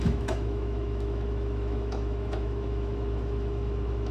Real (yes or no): no